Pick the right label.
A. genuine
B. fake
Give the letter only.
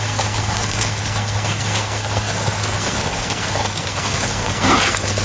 B